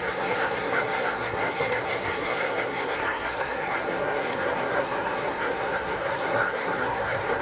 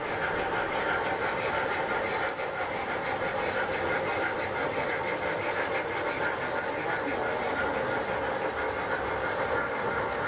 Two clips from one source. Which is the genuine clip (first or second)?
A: second